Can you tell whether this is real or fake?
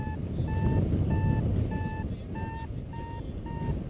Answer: real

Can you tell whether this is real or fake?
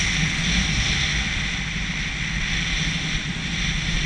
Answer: real